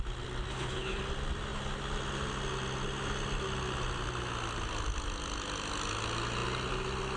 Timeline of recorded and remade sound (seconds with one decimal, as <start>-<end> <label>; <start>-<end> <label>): 0.0-0.5 recorded; 0.5-1.0 remade; 1.0-7.2 recorded